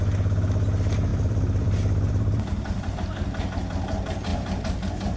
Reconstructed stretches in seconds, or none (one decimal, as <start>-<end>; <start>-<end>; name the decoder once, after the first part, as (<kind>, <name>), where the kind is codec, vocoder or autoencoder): 1.1-2.9 (vocoder, BigVGAN v2)